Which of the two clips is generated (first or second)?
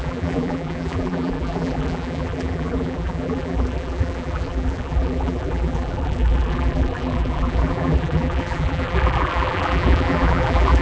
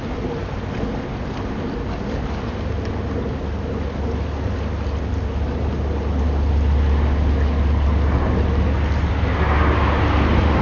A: first